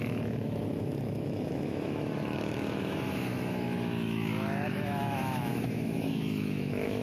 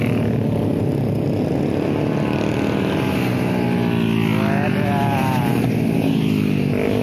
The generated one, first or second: first